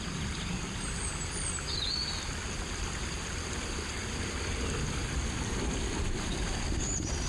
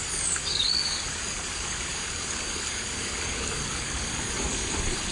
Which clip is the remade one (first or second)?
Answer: second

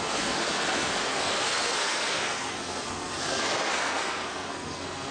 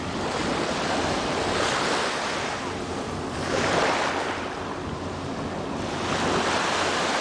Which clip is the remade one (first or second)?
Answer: first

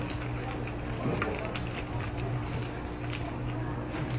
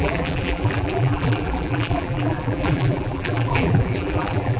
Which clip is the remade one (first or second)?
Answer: second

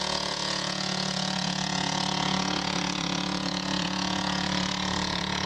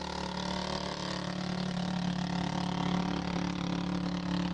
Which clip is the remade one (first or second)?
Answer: first